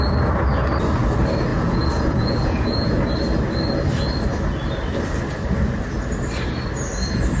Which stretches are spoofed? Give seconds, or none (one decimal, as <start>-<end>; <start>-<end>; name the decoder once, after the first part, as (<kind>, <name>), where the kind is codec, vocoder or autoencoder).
1.5-3.0 (vocoder, Vocos)